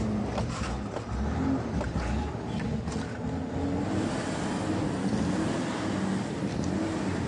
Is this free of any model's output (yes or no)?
yes